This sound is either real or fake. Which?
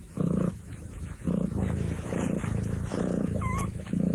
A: fake